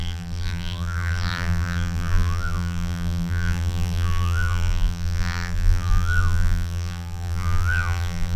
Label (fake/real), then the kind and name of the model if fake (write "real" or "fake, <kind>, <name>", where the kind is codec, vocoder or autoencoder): fake, vocoder, BigVGAN v2